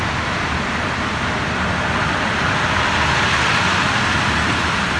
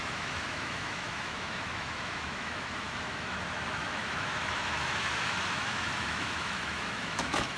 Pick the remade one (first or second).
second